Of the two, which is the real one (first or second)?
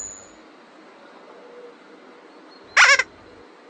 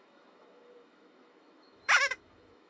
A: first